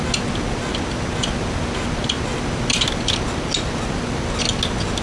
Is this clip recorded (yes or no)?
yes